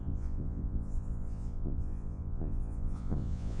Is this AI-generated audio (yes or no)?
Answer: yes